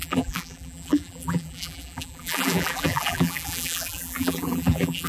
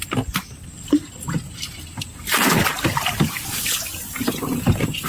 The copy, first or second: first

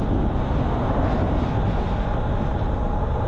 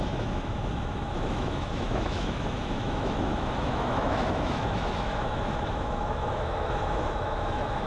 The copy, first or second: second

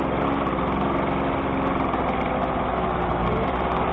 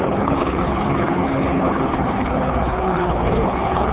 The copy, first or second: second